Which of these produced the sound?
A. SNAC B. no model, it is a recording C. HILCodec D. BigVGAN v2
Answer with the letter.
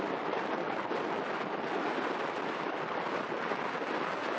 B